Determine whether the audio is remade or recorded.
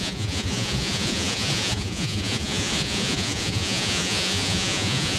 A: remade